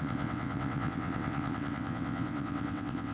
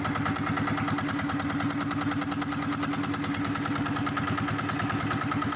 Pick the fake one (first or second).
first